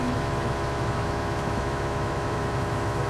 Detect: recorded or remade remade